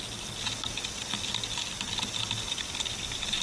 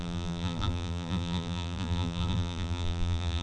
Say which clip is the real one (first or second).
first